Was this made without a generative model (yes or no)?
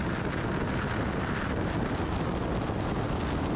yes